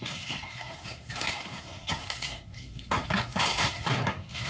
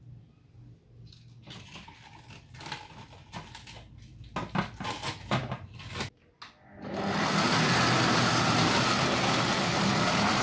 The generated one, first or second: first